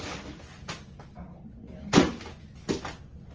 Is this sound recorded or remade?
recorded